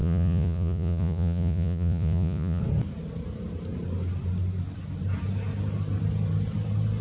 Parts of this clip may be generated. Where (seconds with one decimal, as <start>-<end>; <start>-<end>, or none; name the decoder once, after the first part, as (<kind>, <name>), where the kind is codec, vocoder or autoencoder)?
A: 0.0-2.6 (vocoder, Vocos)